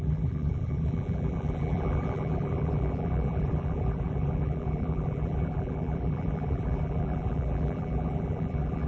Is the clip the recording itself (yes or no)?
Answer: no